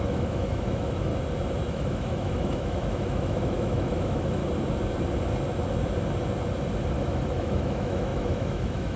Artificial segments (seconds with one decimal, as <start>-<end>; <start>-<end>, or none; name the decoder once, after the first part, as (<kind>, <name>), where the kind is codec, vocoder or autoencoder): 0.0-1.1 (autoencoder, DAC-VAE); 1.7-4.4; 6.9-9.0